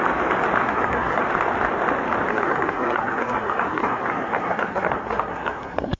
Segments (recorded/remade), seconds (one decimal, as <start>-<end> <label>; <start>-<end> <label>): 0.0-0.6 recorded; 0.6-1.2 remade; 1.2-2.3 recorded; 2.3-6.0 remade